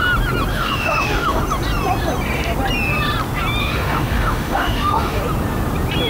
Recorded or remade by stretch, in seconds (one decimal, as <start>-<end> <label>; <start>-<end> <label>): 0.0-0.5 recorded; 0.5-1.4 remade; 1.4-3.6 recorded; 3.6-5.2 remade; 5.2-6.1 recorded